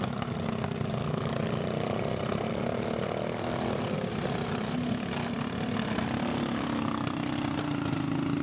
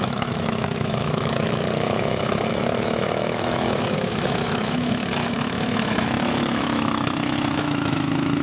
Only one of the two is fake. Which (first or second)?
second